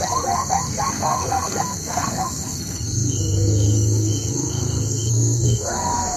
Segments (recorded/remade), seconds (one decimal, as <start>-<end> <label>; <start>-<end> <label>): 0.0-6.2 remade

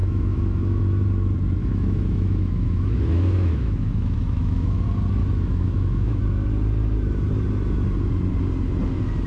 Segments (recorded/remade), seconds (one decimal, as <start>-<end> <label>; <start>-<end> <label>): 0.0-0.8 remade; 0.8-1.6 recorded; 1.6-4.8 remade; 4.8-5.2 recorded; 5.2-6.2 remade; 6.2-9.3 recorded

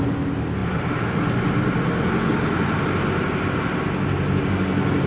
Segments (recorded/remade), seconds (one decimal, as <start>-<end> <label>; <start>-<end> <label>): 0.0-5.1 recorded

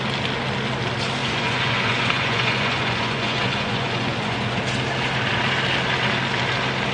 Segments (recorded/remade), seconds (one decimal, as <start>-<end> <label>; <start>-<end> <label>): 0.0-1.2 recorded; 1.2-4.6 remade; 4.6-6.9 recorded

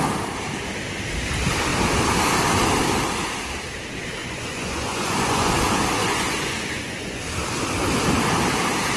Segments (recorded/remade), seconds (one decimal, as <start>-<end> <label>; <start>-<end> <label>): 0.0-4.2 recorded; 4.2-5.5 remade; 5.5-6.0 recorded; 6.0-7.2 remade; 7.2-9.0 recorded

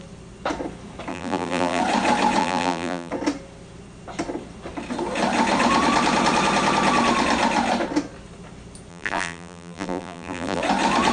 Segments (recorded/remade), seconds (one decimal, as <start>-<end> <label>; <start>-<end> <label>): 0.0-1.1 recorded; 1.1-1.8 remade; 1.8-2.4 recorded; 2.4-3.1 remade; 3.1-8.9 recorded; 8.9-10.6 remade; 10.6-11.1 recorded